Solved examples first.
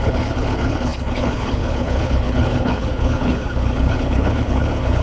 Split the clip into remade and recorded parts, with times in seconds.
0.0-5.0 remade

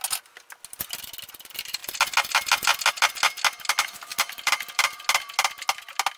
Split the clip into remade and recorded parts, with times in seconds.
0.0-4.1 recorded; 4.1-5.0 remade; 5.0-6.2 recorded

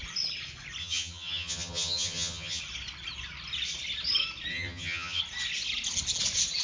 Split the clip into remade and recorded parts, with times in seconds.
0.0-0.8 recorded; 0.8-2.6 remade; 2.6-4.5 recorded; 4.5-5.2 remade; 5.2-6.6 recorded

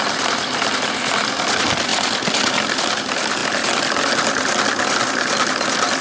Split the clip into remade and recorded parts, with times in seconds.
0.0-6.0 recorded